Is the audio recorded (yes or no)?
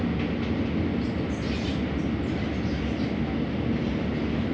yes